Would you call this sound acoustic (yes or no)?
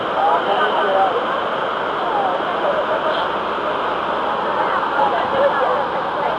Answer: yes